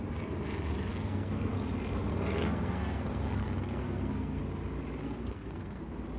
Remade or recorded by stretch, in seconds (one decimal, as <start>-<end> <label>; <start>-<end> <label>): 0.0-0.9 recorded; 0.9-1.5 remade; 1.5-2.1 recorded; 2.1-4.4 remade; 4.4-5.0 recorded; 5.0-5.8 remade; 5.8-6.2 recorded